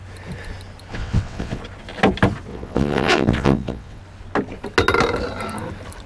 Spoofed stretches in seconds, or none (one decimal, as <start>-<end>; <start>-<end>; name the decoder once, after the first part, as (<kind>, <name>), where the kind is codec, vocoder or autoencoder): 0.9-1.6 (vocoder, WaveNeXt); 2.5-4.0